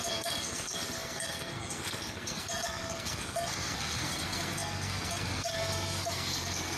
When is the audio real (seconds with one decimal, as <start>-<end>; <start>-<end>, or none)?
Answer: none